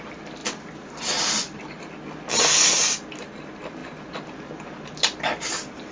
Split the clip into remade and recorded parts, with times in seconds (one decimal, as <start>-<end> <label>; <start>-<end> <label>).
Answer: 0.0-0.4 recorded; 0.4-1.6 remade; 1.6-5.9 recorded